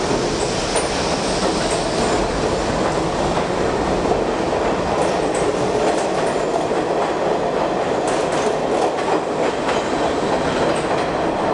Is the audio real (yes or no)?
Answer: yes